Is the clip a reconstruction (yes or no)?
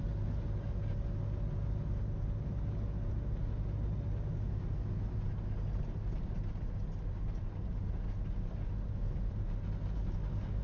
no